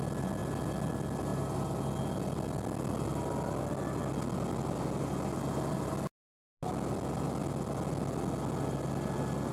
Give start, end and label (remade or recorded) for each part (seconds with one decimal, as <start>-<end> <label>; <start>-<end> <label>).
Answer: 0.0-9.5 recorded